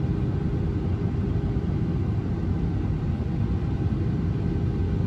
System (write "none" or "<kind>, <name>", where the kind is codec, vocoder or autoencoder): none